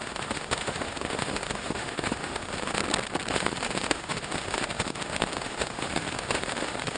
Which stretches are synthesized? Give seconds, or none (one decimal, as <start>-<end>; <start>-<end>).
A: 0.0-2.8; 3.3-7.0